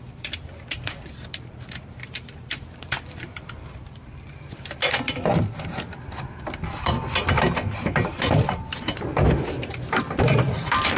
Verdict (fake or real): fake